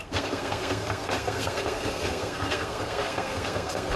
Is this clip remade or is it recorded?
remade